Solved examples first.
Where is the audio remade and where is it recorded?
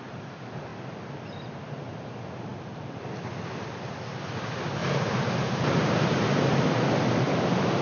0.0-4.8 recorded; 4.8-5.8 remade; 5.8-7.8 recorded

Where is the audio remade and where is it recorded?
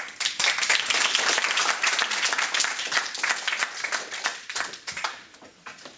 0.0-4.3 recorded; 4.3-6.0 remade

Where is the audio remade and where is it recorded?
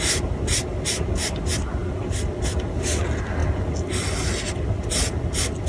0.0-5.7 recorded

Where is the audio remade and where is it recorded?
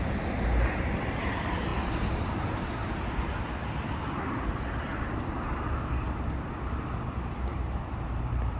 0.0-7.5 recorded; 7.5-8.6 remade